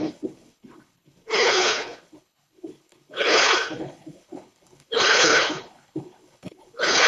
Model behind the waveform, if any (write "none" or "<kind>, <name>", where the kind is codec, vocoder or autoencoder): codec, HILCodec